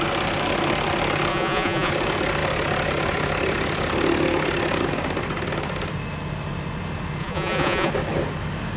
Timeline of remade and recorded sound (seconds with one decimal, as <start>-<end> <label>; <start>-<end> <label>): 0.0-1.3 recorded; 1.3-1.9 remade; 1.9-7.2 recorded; 7.2-7.9 remade; 7.9-8.8 recorded